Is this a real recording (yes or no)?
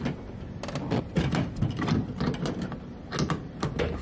yes